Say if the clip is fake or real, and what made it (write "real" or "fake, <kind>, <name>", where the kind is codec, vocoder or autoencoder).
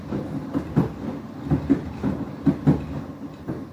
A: real